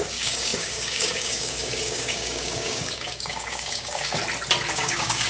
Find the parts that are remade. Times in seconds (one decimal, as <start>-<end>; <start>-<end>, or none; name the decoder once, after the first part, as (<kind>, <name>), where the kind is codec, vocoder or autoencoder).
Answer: 0.0-4.2 (codec, DAC); 4.7-5.3